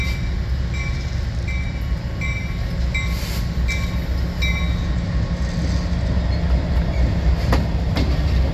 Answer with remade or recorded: recorded